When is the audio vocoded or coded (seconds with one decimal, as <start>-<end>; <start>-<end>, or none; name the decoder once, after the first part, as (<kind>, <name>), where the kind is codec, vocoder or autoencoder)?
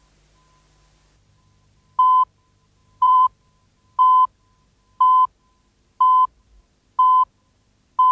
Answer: 2.8-3.5 (vocoder, BigVGAN v2)